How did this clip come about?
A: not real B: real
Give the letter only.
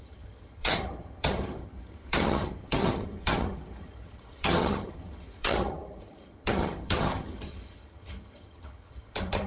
A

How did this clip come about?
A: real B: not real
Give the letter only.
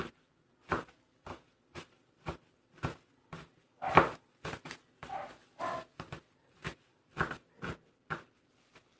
A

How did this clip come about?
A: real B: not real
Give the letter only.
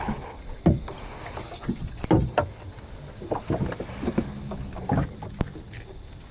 A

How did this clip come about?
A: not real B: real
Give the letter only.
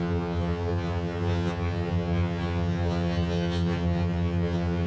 A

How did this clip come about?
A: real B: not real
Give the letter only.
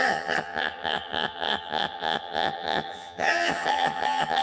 B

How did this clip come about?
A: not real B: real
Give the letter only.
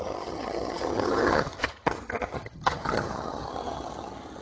A